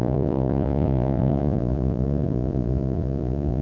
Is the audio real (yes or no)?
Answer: no